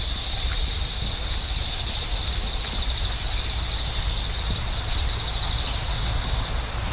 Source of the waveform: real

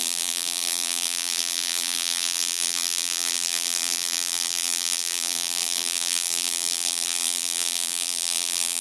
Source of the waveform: fake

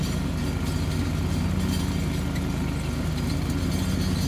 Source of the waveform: real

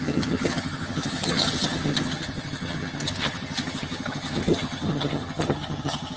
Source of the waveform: fake